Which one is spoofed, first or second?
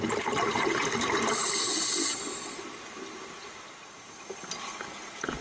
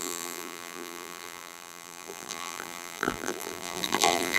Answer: second